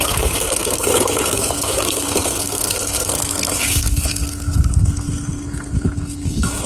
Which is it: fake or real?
fake